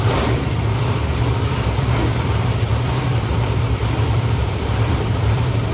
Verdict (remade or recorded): remade